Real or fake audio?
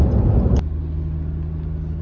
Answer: real